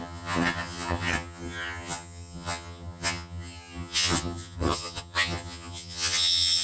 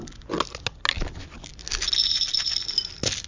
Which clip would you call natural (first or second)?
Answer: second